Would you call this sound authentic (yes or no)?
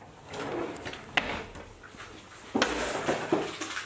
yes